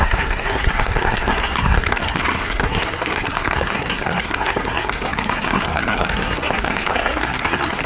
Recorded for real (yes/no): no